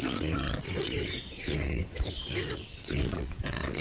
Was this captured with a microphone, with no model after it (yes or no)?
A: no